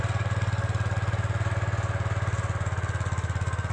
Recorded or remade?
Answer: recorded